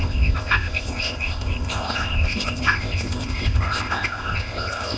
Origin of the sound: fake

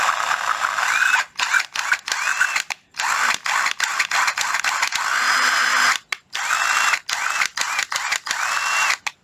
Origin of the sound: real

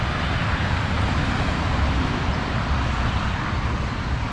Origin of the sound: fake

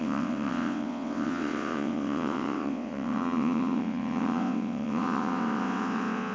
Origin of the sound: fake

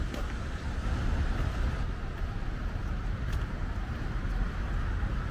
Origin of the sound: real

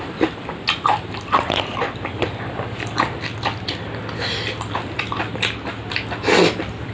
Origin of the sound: real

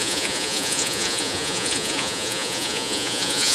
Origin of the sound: fake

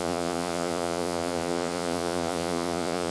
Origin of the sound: fake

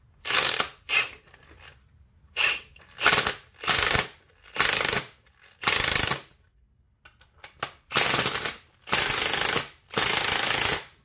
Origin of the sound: real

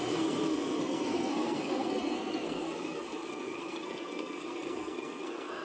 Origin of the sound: fake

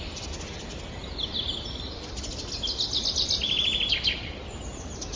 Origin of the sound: real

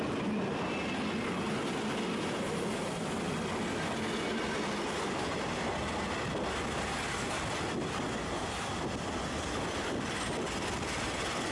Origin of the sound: real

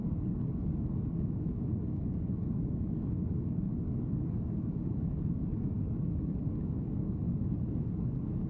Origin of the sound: fake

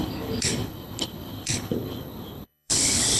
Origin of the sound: fake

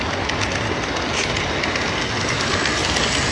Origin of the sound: real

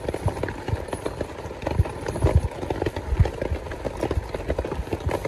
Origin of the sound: real